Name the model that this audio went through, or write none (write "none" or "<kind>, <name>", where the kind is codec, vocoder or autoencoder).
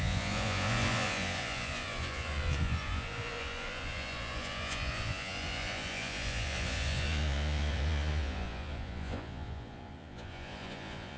vocoder, Vocos